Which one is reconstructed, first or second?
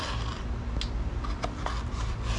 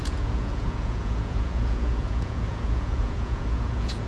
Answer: second